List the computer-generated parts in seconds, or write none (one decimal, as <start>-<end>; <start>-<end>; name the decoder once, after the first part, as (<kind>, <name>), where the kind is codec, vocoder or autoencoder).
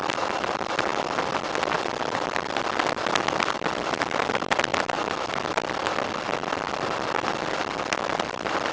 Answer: 0.0-0.9 (vocoder, BigVGAN v2); 1.6-4.7; 8.1-8.7